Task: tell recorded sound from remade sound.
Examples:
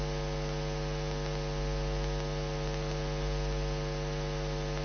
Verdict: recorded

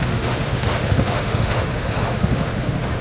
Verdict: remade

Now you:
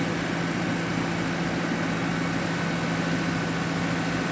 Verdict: recorded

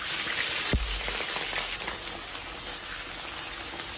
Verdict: recorded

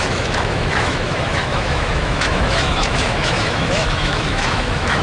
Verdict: remade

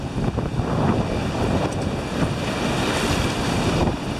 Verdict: recorded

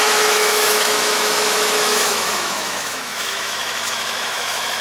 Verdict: remade